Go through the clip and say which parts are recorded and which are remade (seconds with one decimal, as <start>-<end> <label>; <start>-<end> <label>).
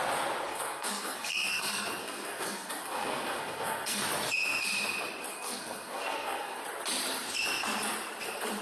0.0-0.5 recorded; 0.5-4.0 remade; 4.0-5.3 recorded; 5.3-6.6 remade; 6.6-8.6 recorded